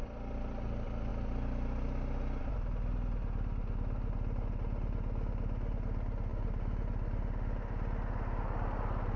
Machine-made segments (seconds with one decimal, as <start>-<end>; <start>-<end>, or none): none